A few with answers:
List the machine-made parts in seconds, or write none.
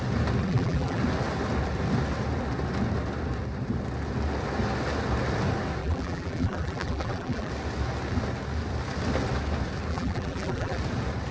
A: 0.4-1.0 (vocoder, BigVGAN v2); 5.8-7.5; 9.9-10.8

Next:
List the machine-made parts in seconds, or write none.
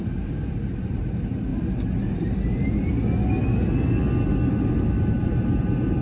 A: 0.0-1.5 (vocoder, BigVGAN v2); 5.1-6.0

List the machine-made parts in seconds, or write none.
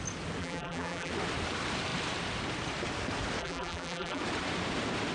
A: 0.4-1.1 (vocoder, BigVGAN v2); 3.4-4.2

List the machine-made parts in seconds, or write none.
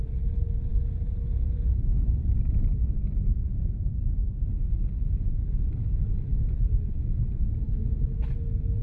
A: 0.7-4.8 (vocoder, BigVGAN v2)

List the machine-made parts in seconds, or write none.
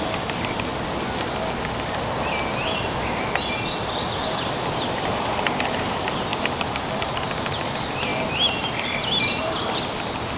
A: 0.0-0.7 (vocoder, BigVGAN v2); 4.2-8.1; 9.1-10.4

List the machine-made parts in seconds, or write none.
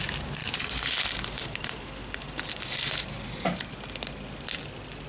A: none